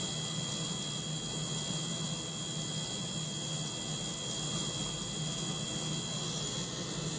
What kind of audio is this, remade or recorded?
recorded